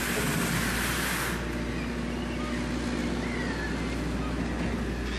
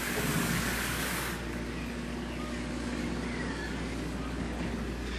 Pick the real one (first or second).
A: first